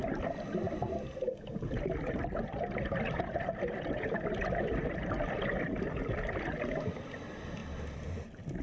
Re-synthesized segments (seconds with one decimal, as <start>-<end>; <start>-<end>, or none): 2.4-6.4; 7.6-8.1